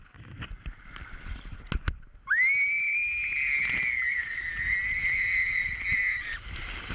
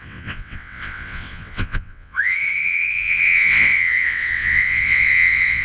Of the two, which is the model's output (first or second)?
second